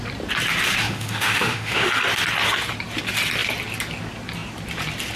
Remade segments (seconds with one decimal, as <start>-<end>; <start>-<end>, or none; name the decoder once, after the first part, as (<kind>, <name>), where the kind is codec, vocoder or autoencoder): 0.8-1.9 (autoencoder, DAC-VAE)